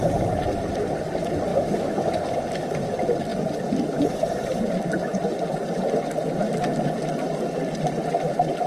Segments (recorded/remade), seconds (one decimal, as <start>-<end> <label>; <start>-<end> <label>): 0.0-1.5 recorded; 1.5-2.1 remade; 2.1-8.7 recorded